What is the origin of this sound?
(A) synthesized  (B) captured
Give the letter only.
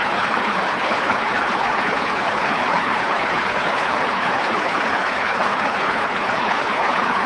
A